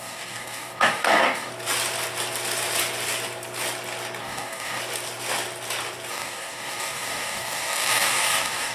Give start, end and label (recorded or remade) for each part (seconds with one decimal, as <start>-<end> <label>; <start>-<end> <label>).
0.0-1.5 remade; 1.5-4.2 recorded; 4.2-4.8 remade; 4.8-6.1 recorded; 6.1-8.7 remade